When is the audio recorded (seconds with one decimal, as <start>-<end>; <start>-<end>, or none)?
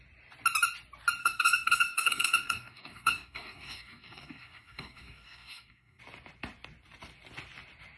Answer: 0.0-1.2; 6.0-8.0